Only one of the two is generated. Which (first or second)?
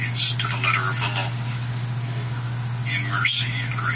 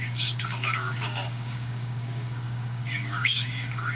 second